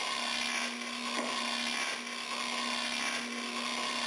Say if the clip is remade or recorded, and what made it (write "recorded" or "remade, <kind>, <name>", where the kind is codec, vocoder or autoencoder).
recorded